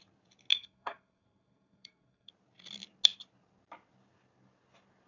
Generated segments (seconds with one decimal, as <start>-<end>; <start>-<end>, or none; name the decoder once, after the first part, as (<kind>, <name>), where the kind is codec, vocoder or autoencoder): 0.5-2.3 (codec, SNAC)